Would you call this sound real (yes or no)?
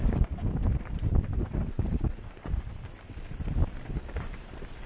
no